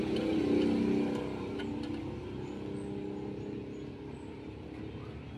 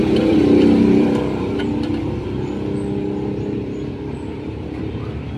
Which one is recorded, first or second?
first